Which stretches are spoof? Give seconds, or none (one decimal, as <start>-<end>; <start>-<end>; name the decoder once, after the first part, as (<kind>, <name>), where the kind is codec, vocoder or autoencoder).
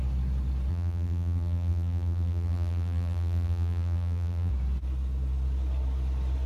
0.7-4.5 (vocoder, BigVGAN v2)